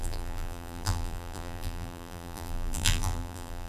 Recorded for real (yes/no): no